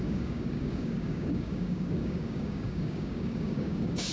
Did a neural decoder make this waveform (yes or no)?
yes